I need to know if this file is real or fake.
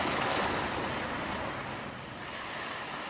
real